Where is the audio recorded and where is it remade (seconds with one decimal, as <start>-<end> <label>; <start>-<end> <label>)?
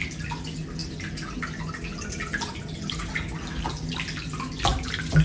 0.0-5.2 recorded